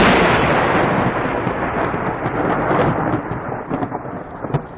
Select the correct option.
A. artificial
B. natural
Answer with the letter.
B